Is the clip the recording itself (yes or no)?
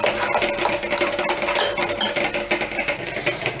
yes